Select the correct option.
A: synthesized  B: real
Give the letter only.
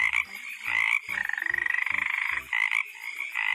B